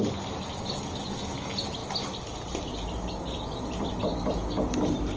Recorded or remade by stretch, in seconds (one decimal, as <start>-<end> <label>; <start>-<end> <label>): 0.0-5.2 recorded

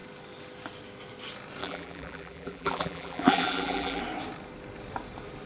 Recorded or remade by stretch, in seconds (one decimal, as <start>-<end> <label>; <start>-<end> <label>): 0.0-1.6 recorded; 1.6-4.0 remade; 4.0-5.5 recorded

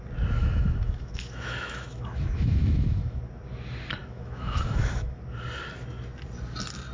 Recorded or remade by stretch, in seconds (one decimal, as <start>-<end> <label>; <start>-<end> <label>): 0.0-0.4 recorded; 0.4-3.2 remade; 3.2-4.0 recorded; 4.0-5.2 remade; 5.2-6.9 recorded

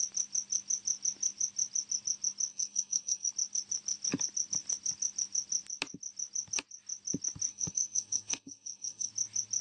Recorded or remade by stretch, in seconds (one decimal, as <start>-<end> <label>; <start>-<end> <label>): 0.0-2.5 recorded; 2.5-3.3 remade; 3.3-7.5 recorded; 7.5-9.1 remade; 9.1-9.6 recorded

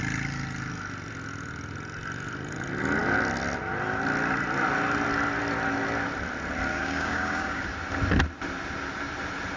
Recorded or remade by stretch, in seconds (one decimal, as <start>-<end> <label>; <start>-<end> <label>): 0.0-6.7 recorded; 6.7-7.6 remade; 7.6-9.6 recorded

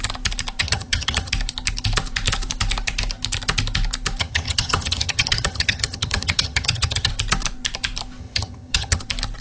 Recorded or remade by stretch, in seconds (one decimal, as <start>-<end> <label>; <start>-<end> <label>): 0.0-0.6 recorded; 0.6-1.3 remade; 1.3-4.2 recorded; 4.2-7.1 remade; 7.1-8.2 recorded; 8.2-9.0 remade; 9.0-9.4 recorded